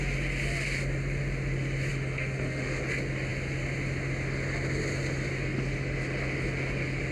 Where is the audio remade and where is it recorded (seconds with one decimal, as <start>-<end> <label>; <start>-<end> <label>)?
0.0-1.9 recorded; 1.9-2.8 remade; 2.8-7.1 recorded